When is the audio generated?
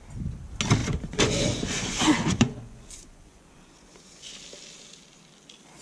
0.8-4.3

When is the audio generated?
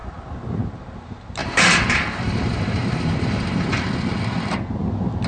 1.4-3.9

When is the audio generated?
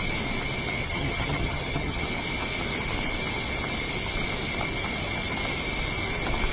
0.8-2.1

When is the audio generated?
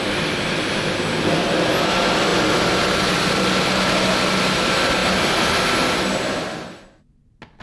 5.0-6.9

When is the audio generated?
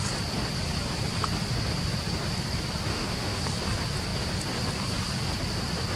2.9-3.4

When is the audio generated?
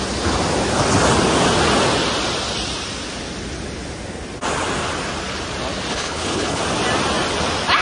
5.9-6.6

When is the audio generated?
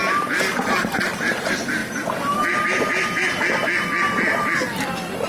none